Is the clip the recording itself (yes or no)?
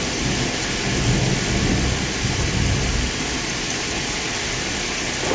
yes